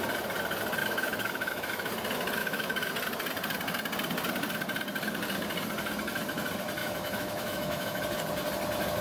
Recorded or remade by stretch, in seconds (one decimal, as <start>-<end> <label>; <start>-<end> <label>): 0.0-0.8 recorded; 0.8-1.9 remade; 1.9-2.4 recorded; 2.4-2.9 remade; 2.9-6.8 recorded; 6.8-8.0 remade; 8.0-9.0 recorded